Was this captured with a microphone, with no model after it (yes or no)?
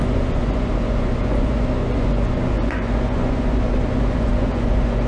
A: no